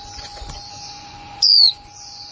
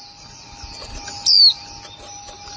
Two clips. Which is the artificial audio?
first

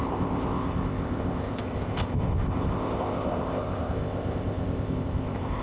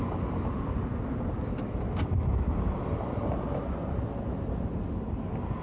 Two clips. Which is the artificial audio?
first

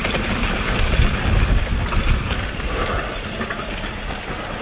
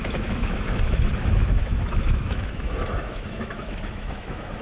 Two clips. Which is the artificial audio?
second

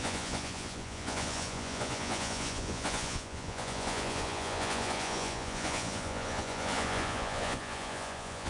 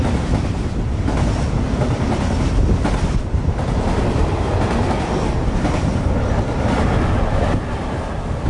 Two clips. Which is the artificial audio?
first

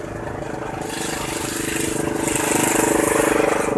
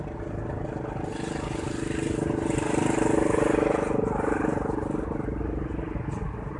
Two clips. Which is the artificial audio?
second